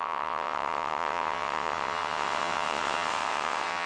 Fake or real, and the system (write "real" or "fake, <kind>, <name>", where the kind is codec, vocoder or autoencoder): fake, vocoder, WaveNeXt